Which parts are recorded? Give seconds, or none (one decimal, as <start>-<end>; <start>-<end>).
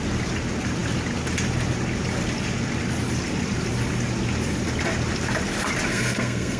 0.0-5.9